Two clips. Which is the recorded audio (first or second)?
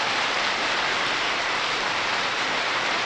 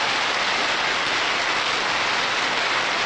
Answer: second